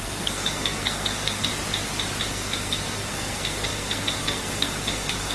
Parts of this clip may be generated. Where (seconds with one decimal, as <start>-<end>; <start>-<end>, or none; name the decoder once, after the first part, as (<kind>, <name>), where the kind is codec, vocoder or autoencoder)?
0.0-1.5 (codec, SNAC); 2.3-5.3